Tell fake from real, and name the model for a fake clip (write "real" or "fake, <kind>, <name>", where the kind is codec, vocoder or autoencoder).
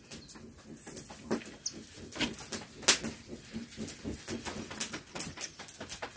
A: real